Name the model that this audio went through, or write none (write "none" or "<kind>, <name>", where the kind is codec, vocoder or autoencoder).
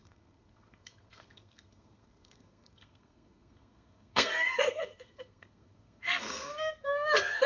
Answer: codec, SNAC